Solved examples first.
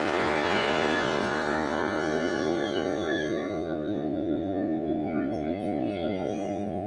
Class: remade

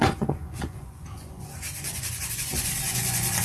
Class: remade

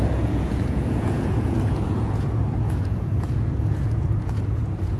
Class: remade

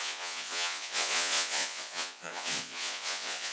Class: remade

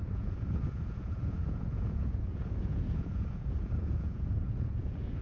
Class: remade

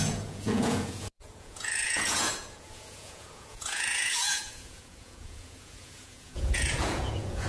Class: remade